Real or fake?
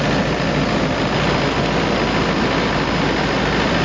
real